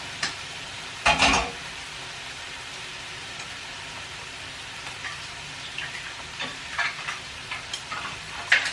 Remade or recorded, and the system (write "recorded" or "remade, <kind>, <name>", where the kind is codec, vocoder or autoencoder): remade, vocoder, BigVGAN v2